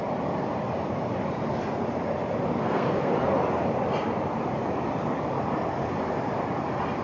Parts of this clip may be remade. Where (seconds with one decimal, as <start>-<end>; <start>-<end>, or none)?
2.6-3.1